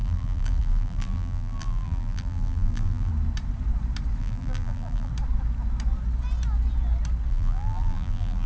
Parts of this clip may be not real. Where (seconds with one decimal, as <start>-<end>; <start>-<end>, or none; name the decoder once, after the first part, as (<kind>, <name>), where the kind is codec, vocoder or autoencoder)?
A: 0.0-3.1 (vocoder, BigVGAN v2); 4.2-5.1; 7.3-8.5